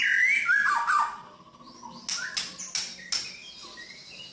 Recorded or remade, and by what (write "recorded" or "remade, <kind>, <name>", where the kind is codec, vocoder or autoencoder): recorded